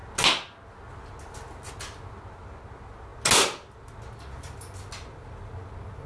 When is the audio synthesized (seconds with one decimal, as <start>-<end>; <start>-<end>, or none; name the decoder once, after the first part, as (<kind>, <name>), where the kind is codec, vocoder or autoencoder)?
none